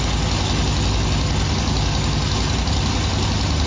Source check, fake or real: real